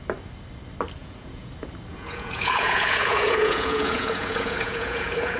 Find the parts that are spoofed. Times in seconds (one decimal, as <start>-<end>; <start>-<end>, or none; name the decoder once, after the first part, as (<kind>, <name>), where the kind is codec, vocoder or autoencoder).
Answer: 1.0-1.5 (vocoder, Vocos); 1.9-5.4